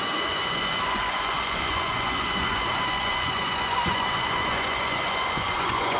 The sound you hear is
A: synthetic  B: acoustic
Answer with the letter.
A